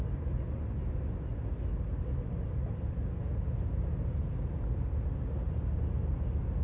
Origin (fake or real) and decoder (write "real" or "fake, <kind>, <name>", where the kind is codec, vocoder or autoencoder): real